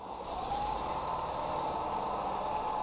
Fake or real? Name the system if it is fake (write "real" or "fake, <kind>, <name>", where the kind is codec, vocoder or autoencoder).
fake, vocoder, BigVGAN v2